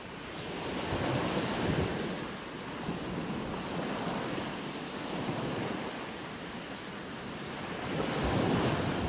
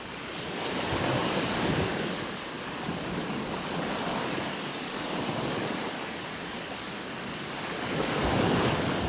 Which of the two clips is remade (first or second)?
second